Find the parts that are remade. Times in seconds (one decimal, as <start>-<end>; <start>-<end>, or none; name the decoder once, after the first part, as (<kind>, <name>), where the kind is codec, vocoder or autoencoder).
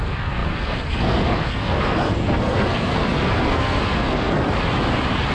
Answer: 0.0-4.4 (codec, SNAC)